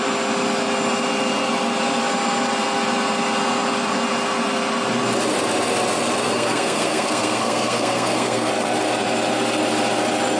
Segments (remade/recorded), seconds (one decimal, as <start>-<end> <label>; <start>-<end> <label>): 0.0-6.2 recorded; 6.2-8.5 remade; 8.5-10.4 recorded